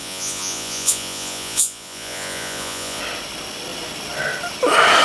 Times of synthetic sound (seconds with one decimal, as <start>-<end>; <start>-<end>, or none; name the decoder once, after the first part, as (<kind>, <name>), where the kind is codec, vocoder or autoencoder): 0.0-3.0 (vocoder, Vocos)